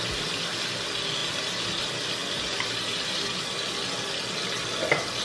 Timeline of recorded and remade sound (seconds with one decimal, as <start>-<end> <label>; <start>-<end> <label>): 0.0-5.2 recorded